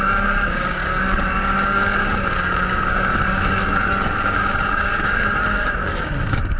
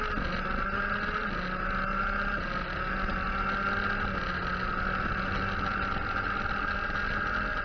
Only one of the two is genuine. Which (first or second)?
second